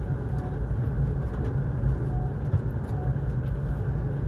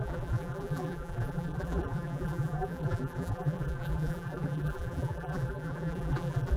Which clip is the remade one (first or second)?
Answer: second